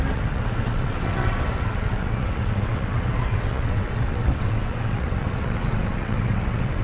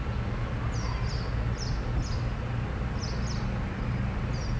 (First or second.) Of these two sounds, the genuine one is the second